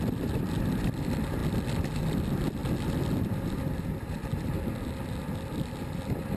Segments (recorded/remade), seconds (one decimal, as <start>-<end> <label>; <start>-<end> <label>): 0.0-6.4 recorded